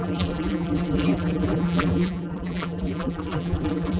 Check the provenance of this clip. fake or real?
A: fake